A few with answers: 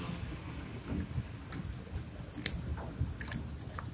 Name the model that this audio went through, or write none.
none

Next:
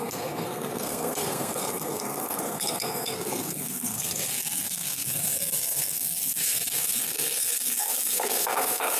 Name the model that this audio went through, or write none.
codec, SNAC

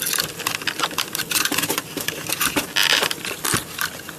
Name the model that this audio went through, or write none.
none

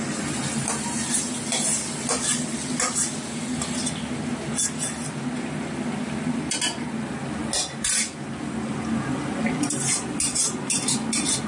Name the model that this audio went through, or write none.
none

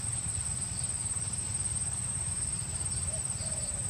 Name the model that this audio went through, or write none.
vocoder, BigVGAN v2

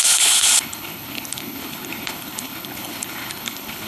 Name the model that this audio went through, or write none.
codec, HILCodec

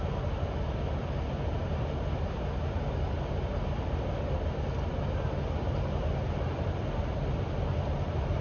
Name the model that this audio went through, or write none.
none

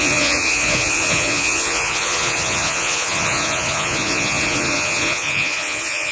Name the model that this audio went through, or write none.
vocoder, Vocos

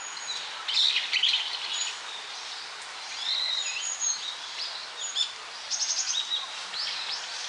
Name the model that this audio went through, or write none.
none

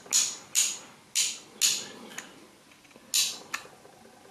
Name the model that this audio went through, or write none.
none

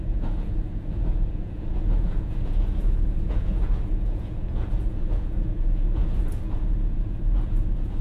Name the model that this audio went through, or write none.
vocoder, Vocos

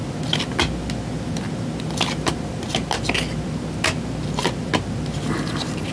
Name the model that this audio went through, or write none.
none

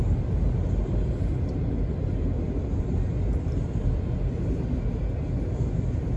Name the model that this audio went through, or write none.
none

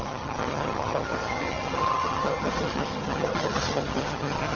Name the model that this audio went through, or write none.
vocoder, HiFi-GAN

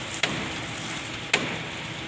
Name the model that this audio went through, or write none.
none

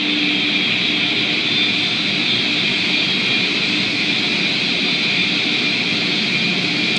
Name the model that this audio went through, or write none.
none